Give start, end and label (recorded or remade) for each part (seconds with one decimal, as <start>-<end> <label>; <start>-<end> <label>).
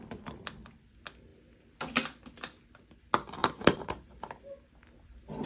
0.0-3.4 recorded; 3.4-4.1 remade; 4.1-5.5 recorded